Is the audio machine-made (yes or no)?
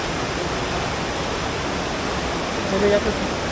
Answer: no